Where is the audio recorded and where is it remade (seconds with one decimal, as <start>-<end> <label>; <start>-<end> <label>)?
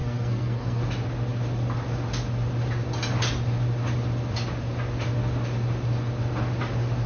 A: 0.0-0.8 remade; 0.8-7.1 recorded